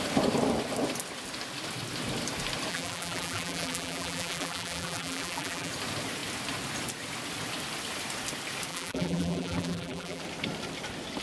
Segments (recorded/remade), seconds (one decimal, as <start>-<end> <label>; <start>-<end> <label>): 0.0-2.7 recorded; 2.7-5.7 remade; 5.7-8.7 recorded; 8.7-10.2 remade; 10.2-11.2 recorded